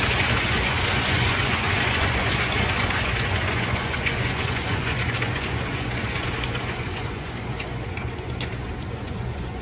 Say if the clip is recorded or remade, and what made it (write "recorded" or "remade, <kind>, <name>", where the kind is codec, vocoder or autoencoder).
remade, vocoder, Vocos